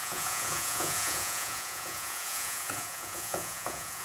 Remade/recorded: remade